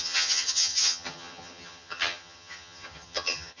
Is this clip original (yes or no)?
no